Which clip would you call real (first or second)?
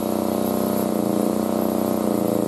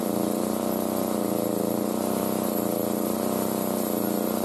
first